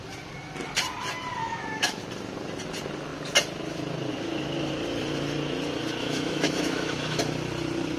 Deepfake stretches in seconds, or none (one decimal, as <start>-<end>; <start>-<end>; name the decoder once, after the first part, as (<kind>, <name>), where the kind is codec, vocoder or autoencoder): 1.4-2.0 (autoencoder, DAC-VAE); 6.0-7.2